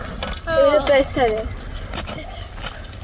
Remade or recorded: recorded